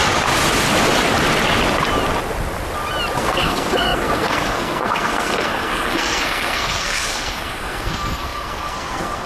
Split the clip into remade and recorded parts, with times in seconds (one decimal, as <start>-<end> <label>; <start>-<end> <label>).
0.0-3.2 recorded; 3.2-9.3 remade